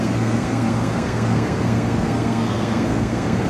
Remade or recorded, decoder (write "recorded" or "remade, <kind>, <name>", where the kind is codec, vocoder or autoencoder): remade, codec, SNAC